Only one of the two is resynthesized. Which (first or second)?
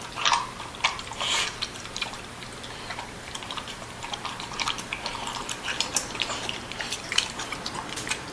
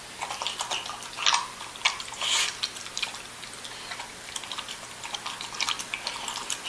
first